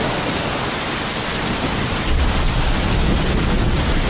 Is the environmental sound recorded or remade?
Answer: recorded